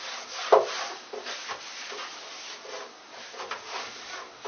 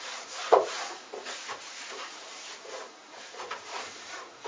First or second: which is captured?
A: first